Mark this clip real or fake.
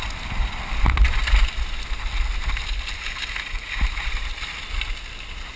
real